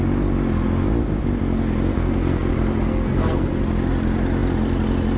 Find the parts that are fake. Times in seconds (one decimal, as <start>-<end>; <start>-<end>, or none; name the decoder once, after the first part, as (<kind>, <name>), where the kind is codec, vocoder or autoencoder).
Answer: 1.9-2.5 (codec, SNAC); 2.9-3.6